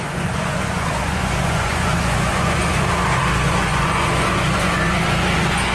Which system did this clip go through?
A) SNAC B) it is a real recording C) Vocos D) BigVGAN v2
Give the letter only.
C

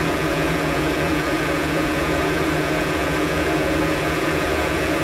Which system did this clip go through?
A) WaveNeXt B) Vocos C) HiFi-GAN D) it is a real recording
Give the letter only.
B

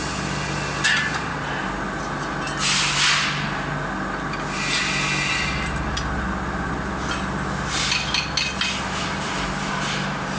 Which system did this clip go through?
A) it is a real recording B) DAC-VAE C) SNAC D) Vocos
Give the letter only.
A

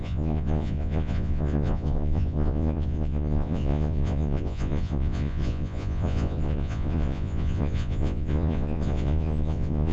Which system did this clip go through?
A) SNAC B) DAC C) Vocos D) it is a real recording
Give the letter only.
C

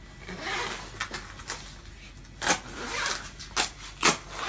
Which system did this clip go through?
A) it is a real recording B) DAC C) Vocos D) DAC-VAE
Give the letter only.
A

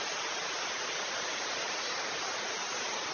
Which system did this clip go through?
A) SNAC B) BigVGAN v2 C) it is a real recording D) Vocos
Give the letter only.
C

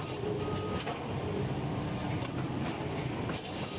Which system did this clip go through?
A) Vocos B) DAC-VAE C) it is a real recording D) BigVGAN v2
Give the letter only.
C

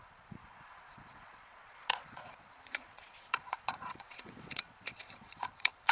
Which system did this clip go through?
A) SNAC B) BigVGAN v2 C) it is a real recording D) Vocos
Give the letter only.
D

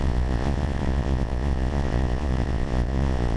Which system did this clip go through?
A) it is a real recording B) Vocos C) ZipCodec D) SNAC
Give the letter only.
B